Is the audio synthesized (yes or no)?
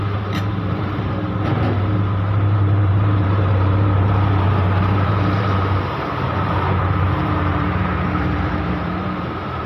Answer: yes